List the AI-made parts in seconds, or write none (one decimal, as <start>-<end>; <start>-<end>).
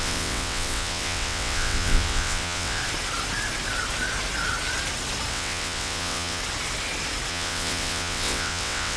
0.0-2.8; 5.3-6.4; 7.3-9.0